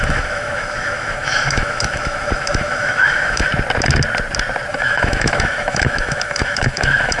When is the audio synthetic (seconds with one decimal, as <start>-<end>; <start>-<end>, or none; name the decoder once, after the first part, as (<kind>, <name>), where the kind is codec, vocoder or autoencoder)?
0.0-3.5 (autoencoder, DAC-VAE); 4.7-7.2

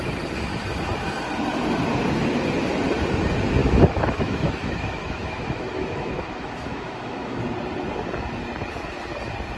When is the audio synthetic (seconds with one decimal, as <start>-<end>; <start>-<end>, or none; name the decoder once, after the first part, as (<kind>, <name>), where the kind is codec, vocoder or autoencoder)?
3.6-7.4 (autoencoder, DAC-VAE)

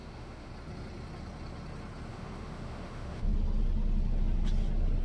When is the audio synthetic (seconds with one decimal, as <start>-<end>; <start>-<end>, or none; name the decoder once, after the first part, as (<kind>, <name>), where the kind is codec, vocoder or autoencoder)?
0.0-0.5 (autoencoder, DAC-VAE); 2.1-3.3

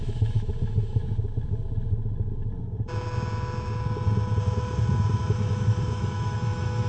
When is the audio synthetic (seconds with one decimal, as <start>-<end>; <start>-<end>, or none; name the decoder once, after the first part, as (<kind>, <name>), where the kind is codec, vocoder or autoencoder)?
0.0-1.0 (autoencoder, DAC-VAE); 5.1-6.9

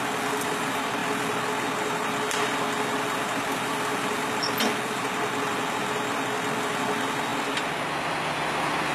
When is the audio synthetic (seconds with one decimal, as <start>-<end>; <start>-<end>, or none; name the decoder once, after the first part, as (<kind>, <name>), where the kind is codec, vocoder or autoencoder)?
none